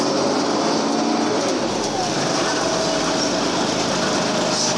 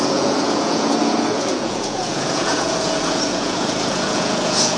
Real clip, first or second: first